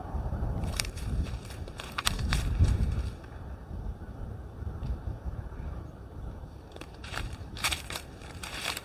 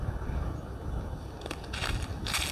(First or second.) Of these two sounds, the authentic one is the second